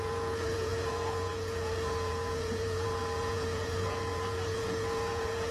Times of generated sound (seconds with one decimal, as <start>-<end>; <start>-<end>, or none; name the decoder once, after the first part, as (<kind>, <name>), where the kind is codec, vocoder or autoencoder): 0.0-5.5 (vocoder, Vocos)